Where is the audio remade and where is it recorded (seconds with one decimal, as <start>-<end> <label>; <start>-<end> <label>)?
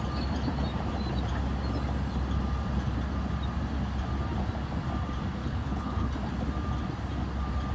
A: 0.0-5.4 recorded; 5.4-6.1 remade; 6.1-7.7 recorded